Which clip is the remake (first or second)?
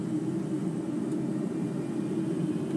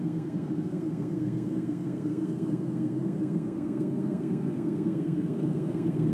second